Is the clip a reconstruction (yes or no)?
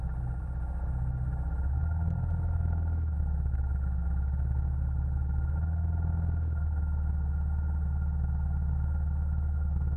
no